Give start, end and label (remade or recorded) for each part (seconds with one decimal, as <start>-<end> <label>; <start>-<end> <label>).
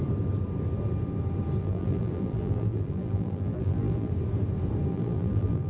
0.0-1.6 recorded; 1.6-4.1 remade; 4.1-4.9 recorded; 4.9-5.7 remade